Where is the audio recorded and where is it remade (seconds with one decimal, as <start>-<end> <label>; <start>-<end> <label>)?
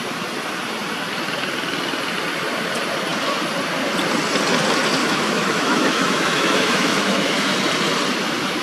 0.0-5.0 recorded; 5.0-7.4 remade; 7.4-8.6 recorded